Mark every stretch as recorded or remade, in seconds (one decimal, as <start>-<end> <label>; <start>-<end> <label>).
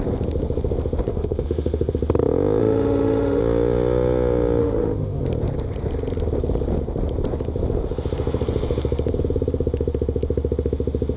0.0-1.1 recorded; 1.1-1.9 remade; 1.9-2.6 recorded; 2.6-3.4 remade; 3.4-4.6 recorded; 4.6-5.2 remade; 5.2-11.2 recorded